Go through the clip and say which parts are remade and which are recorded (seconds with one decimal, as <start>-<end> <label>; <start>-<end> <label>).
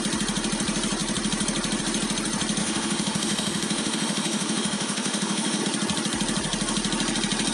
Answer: 0.0-2.6 recorded; 2.6-5.6 remade; 5.6-7.5 recorded